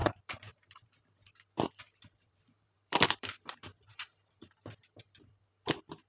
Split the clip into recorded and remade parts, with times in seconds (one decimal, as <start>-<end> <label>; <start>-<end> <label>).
0.0-6.1 remade